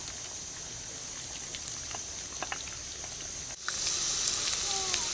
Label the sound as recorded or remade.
recorded